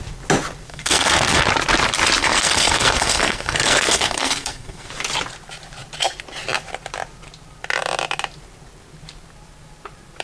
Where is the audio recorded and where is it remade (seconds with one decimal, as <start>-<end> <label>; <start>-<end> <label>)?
0.0-0.7 recorded; 0.7-1.4 remade; 1.4-2.2 recorded; 2.2-4.9 remade; 4.9-10.2 recorded